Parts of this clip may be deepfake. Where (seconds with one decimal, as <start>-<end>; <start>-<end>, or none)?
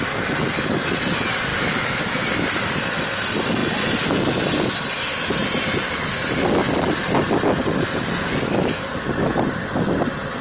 1.5-2.3